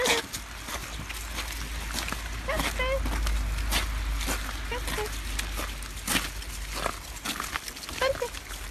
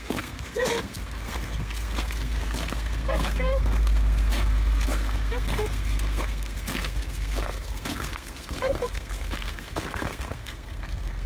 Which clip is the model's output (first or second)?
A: second